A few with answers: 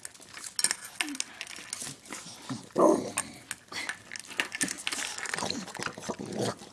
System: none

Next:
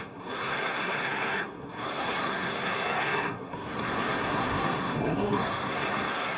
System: codec, SNAC